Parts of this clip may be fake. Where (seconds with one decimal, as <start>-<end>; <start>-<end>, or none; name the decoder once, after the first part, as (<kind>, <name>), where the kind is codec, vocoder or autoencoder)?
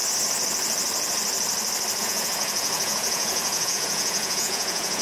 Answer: 2.0-5.0 (vocoder, Vocos)